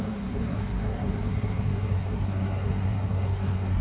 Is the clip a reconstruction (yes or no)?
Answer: yes